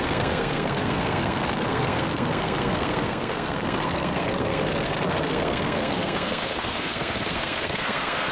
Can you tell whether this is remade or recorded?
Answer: remade